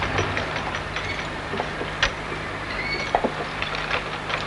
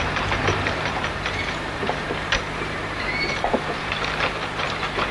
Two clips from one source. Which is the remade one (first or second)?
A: second